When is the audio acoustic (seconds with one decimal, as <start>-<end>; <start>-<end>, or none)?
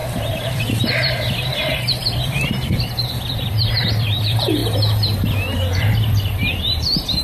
4.6-5.8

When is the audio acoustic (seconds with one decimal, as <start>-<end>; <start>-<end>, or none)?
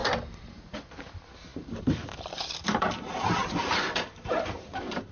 0.0-0.5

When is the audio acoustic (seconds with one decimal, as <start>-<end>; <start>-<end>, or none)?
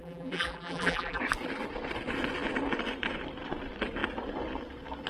1.2-5.1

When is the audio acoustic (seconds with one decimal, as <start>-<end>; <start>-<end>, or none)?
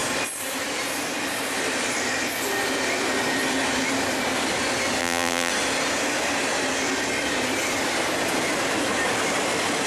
0.0-5.0; 5.5-9.9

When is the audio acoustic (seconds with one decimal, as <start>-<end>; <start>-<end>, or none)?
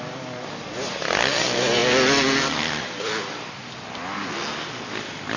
0.0-5.4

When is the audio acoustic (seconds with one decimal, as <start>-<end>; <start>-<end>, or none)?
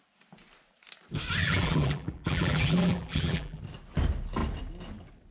0.0-1.4; 3.6-5.3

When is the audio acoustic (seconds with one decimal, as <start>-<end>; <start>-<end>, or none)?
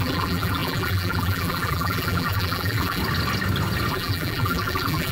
3.0-3.9